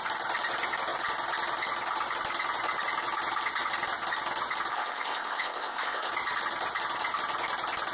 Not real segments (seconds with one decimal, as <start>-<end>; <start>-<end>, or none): 4.7-6.1